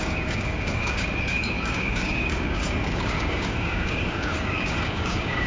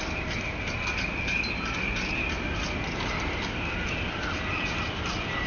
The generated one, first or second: first